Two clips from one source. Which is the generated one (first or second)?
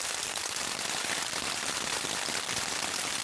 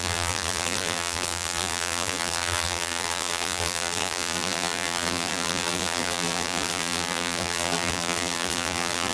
second